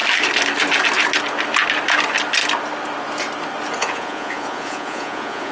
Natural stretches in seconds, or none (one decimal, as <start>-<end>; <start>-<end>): 0.0-3.8